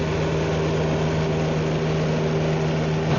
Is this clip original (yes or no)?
yes